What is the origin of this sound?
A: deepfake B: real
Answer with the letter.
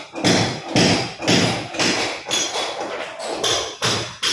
B